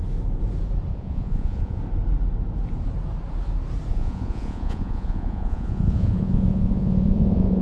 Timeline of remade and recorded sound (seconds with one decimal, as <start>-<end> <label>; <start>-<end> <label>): 0.0-0.9 recorded; 0.9-1.8 remade; 1.8-3.9 recorded; 3.9-7.6 remade